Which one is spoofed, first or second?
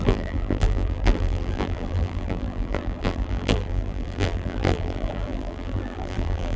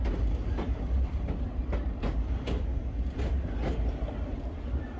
first